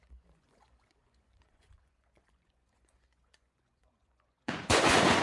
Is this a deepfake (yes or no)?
yes